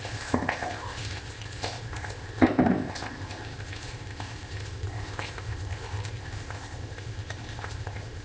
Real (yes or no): no